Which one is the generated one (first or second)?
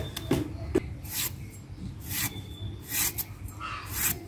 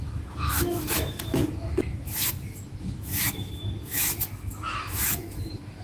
second